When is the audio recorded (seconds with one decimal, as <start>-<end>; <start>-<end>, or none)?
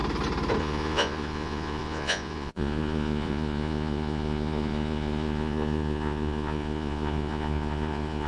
0.0-0.6